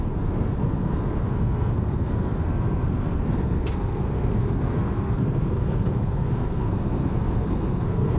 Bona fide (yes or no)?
no